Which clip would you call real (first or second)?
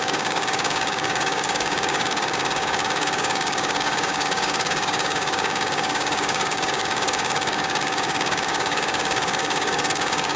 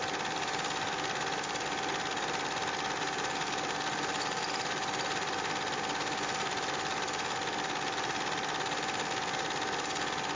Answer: second